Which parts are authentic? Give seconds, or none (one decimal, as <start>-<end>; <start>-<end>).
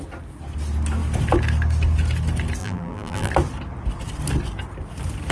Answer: 0.0-2.6; 3.3-5.3